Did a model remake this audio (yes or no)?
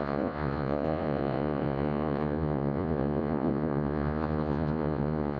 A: yes